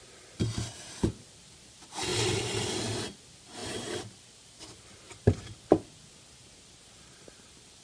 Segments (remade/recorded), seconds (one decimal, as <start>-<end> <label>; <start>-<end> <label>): 0.0-7.8 recorded